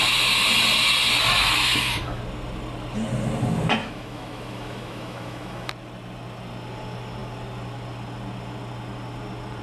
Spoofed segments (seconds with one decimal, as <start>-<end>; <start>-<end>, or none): 1.7-2.2; 3.8-5.7